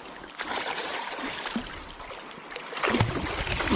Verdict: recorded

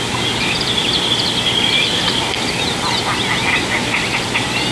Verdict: recorded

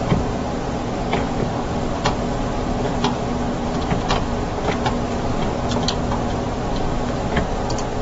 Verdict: remade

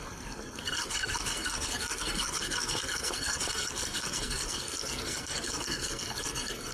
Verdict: remade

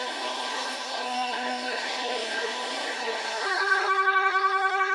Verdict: remade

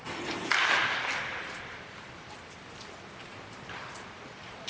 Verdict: recorded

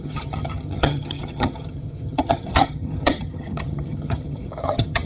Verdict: remade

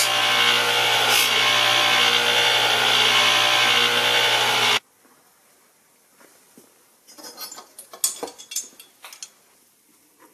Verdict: recorded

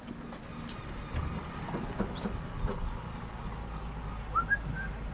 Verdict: recorded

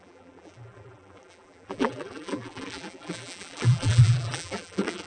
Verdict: remade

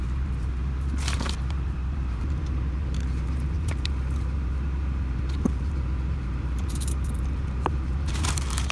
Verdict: remade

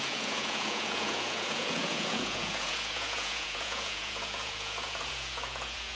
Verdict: remade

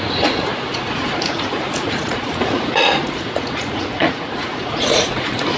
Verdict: remade